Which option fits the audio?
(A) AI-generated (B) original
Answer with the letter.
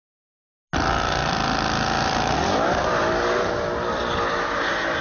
B